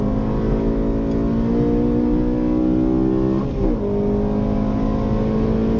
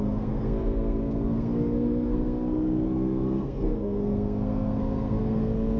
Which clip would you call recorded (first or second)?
first